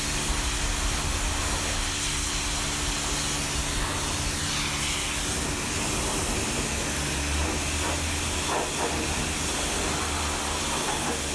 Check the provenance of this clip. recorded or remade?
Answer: recorded